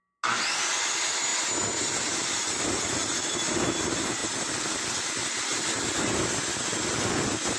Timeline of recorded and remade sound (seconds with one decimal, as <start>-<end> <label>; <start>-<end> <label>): 0.0-7.6 recorded